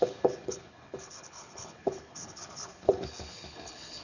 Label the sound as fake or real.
fake